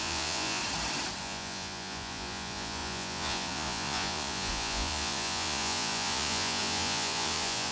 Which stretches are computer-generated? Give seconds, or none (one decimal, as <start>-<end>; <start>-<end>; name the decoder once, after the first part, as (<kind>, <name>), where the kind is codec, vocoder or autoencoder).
0.0-0.6 (vocoder, Vocos); 1.2-7.7